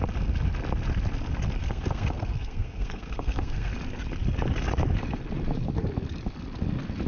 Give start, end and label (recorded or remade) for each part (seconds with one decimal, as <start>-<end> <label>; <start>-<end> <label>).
0.0-1.6 recorded; 1.6-3.7 remade; 3.7-7.1 recorded